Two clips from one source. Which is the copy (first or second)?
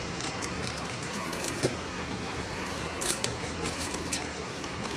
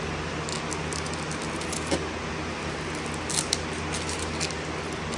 first